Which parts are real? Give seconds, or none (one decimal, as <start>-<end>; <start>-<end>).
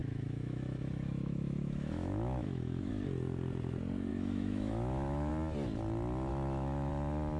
2.9-4.1; 5.3-6.3; 6.9-7.4